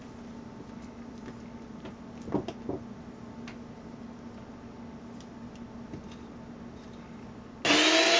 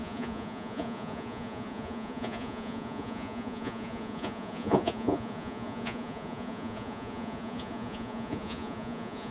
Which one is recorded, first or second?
first